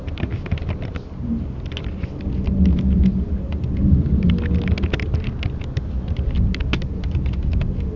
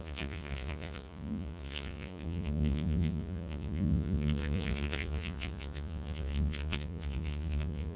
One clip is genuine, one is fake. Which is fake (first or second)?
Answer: second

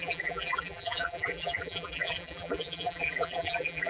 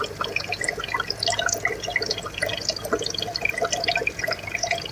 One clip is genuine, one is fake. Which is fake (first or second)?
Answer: first